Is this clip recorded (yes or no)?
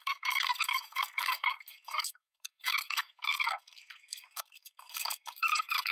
no